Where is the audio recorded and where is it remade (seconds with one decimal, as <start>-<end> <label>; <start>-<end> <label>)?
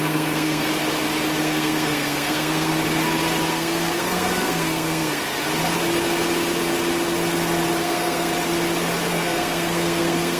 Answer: 0.0-0.7 remade; 0.7-1.4 recorded; 1.4-2.7 remade; 2.7-3.5 recorded; 3.5-5.2 remade; 5.2-7.8 recorded; 7.8-8.3 remade; 8.3-9.1 recorded; 9.1-10.4 remade